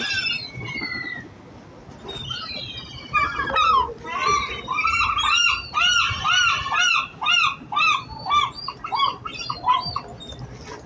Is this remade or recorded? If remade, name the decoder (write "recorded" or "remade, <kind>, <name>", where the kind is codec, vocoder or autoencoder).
recorded